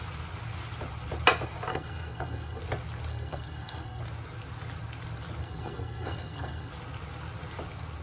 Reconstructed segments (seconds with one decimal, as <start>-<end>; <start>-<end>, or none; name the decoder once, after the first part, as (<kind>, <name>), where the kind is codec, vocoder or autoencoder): 1.7-2.6 (codec, SNAC); 3.1-4.0; 5.4-6.7